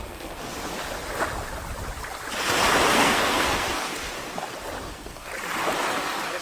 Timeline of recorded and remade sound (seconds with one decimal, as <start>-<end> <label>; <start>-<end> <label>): 0.0-0.5 remade; 0.5-2.9 recorded; 2.9-3.9 remade; 3.9-4.8 recorded; 4.8-5.3 remade; 5.3-5.9 recorded; 5.9-6.4 remade